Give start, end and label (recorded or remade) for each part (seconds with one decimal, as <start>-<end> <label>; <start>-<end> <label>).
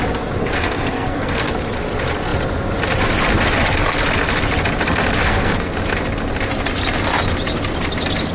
0.0-0.4 recorded; 0.4-1.5 remade; 1.5-5.2 recorded; 5.2-5.7 remade; 5.7-8.3 recorded